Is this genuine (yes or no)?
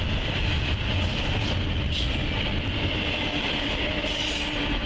yes